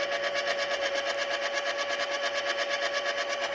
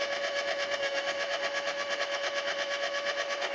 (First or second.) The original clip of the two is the first